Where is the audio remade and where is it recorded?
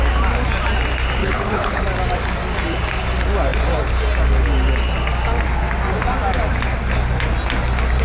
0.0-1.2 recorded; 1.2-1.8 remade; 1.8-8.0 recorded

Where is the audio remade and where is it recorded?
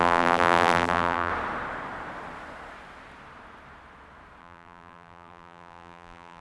0.0-1.3 remade; 1.3-4.4 recorded; 4.4-6.4 remade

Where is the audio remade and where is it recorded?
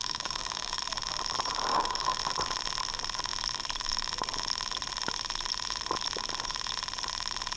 0.0-0.8 remade; 0.8-1.7 recorded; 1.7-2.2 remade; 2.2-7.6 recorded